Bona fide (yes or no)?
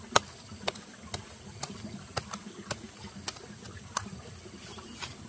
yes